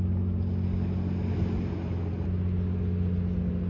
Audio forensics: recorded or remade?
recorded